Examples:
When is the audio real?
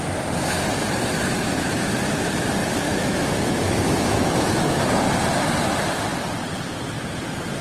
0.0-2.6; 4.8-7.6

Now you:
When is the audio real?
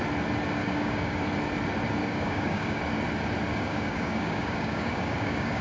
0.0-0.6; 1.2-2.0; 2.8-3.5